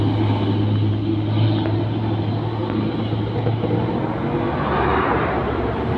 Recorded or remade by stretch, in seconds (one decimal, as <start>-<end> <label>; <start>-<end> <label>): 0.0-4.9 recorded; 4.9-6.0 remade